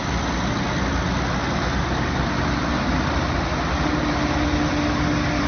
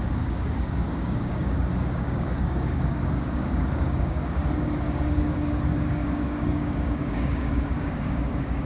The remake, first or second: second